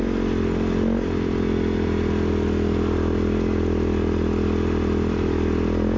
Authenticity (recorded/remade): recorded